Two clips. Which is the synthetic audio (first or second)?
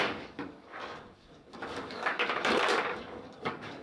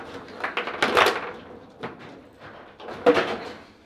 first